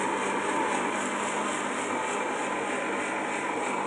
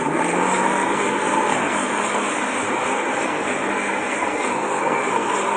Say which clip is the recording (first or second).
first